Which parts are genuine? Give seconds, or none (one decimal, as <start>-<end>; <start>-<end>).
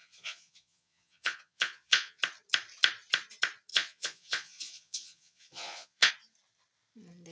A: 2.2-3.7; 6.1-7.3